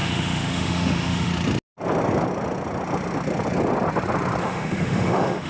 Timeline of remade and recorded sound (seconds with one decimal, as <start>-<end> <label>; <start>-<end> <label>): 0.0-1.3 remade; 1.3-4.4 recorded; 4.4-5.5 remade